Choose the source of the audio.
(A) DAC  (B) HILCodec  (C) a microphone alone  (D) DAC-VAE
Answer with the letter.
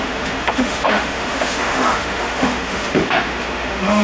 D